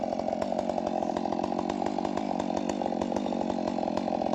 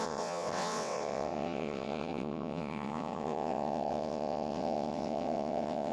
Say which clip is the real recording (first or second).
first